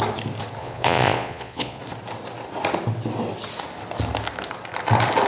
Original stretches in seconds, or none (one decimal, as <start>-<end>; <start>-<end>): 0.0-0.6; 1.8-5.3

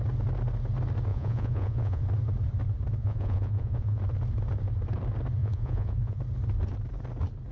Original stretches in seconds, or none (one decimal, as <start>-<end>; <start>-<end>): 0.0-1.1; 2.0-3.0; 4.0-5.4; 6.2-7.5

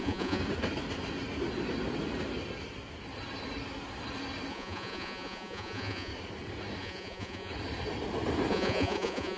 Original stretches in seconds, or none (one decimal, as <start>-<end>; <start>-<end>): 0.4-4.5; 6.1-6.8; 7.5-8.5

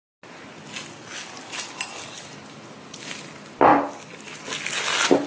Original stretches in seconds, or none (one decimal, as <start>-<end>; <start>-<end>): 0.0-5.3

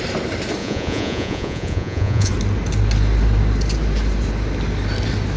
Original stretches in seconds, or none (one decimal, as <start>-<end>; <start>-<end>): 0.0-0.6; 2.3-5.4

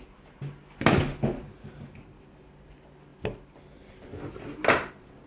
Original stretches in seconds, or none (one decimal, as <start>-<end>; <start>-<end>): 0.0-5.3

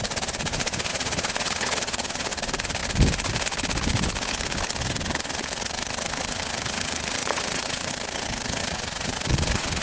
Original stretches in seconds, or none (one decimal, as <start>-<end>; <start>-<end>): 0.0-0.9; 2.3-7.2; 7.9-8.6